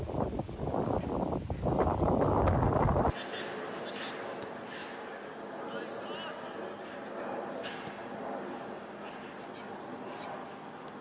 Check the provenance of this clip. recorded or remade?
recorded